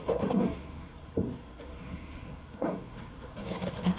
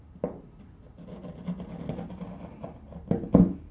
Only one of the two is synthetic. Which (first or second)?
first